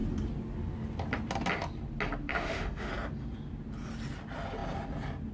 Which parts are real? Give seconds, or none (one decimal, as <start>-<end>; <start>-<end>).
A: 0.0-2.3; 2.9-5.3